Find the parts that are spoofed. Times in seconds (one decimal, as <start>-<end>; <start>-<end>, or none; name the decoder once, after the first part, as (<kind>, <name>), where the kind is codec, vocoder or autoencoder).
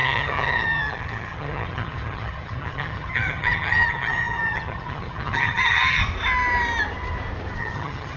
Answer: 0.0-6.0 (vocoder, HiFi-GAN); 7.6-8.2